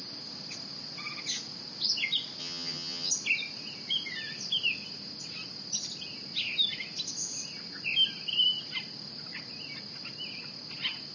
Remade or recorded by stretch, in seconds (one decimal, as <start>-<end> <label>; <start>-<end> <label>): 0.0-2.4 recorded; 2.4-3.1 remade; 3.1-11.1 recorded